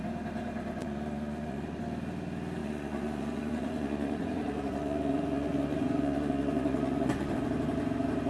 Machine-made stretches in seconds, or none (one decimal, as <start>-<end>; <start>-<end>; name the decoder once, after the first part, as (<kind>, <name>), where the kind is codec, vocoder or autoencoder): 0.8-1.8 (vocoder, Vocos); 2.6-7.3